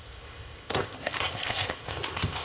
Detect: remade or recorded remade